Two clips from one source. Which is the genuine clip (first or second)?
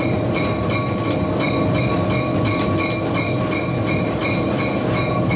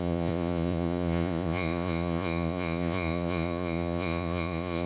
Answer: first